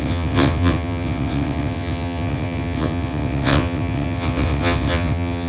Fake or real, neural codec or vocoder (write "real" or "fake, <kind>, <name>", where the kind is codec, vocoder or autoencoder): fake, vocoder, WaveNeXt